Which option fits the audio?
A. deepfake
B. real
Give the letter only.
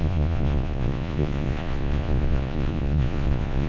A